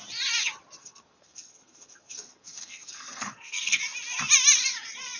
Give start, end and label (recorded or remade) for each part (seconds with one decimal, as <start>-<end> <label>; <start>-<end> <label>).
0.0-0.8 recorded; 0.8-3.8 remade; 3.8-5.2 recorded

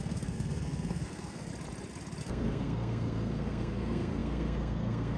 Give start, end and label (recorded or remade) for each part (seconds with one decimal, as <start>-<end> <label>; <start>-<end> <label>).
0.0-1.5 remade; 1.5-2.2 recorded; 2.2-5.2 remade